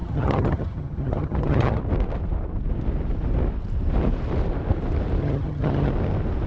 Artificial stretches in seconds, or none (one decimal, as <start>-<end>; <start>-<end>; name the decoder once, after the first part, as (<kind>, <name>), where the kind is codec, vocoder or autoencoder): 0.0-1.8 (vocoder, HiFi-GAN); 5.2-5.9